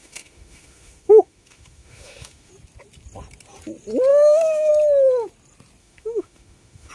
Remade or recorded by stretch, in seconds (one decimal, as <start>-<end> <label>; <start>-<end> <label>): 0.0-2.5 remade; 2.5-4.1 recorded; 4.1-4.7 remade; 4.7-5.8 recorded; 5.8-6.9 remade